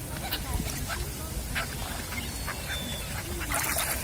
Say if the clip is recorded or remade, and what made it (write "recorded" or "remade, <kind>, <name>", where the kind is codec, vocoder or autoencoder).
recorded